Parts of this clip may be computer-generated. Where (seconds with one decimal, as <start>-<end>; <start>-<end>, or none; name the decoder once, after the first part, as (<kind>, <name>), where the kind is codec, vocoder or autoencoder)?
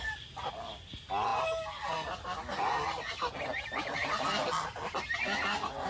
none